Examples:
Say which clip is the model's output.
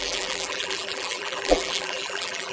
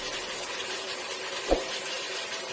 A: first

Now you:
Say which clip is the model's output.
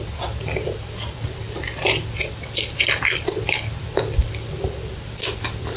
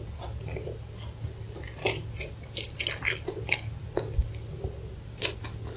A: first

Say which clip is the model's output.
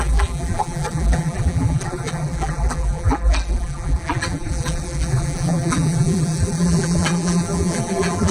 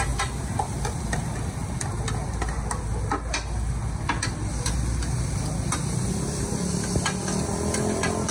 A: first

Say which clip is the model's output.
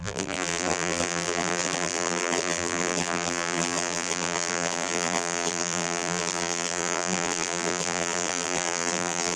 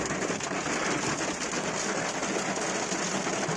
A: first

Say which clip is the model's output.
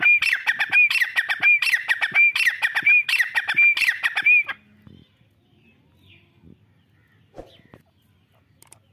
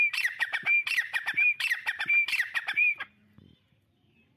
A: second